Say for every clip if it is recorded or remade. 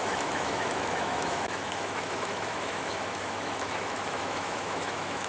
remade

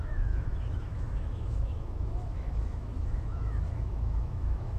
remade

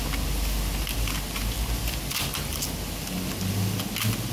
recorded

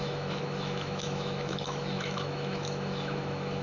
remade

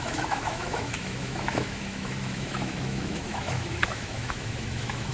remade